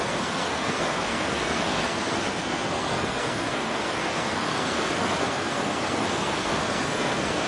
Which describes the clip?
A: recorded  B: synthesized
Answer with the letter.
B